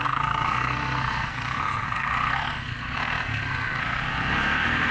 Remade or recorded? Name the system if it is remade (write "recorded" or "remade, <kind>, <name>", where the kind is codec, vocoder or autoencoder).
remade, codec, SNAC